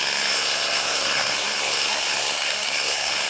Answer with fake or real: fake